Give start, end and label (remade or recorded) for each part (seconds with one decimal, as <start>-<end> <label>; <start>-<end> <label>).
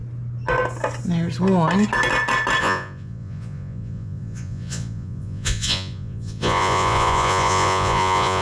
0.0-2.6 recorded; 2.6-8.4 remade